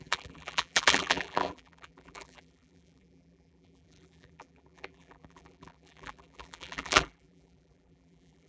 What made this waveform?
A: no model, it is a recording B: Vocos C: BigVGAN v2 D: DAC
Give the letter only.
C